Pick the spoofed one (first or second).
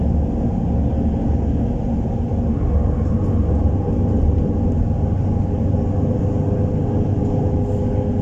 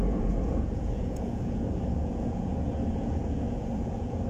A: second